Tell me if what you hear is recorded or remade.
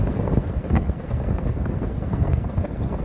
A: remade